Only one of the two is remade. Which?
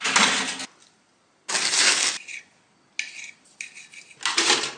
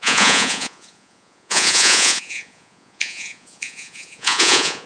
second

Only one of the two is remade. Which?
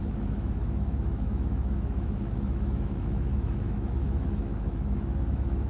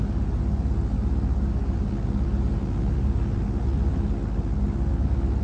first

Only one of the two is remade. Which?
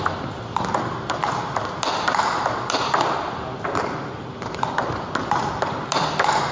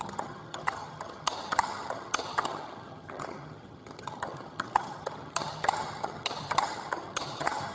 second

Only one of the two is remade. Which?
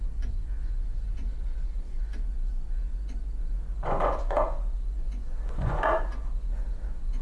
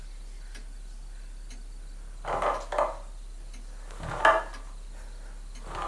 first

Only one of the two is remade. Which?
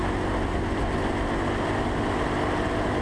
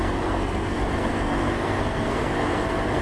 second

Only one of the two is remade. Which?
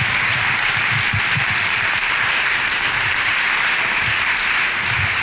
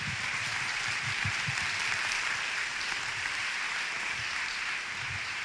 second